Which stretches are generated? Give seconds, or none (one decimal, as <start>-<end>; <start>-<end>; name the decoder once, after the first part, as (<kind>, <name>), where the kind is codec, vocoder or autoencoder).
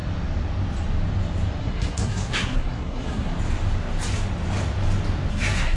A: 1.6-3.3 (codec, SNAC); 5.3-5.8